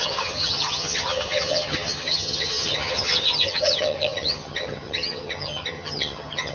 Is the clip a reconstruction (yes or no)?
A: yes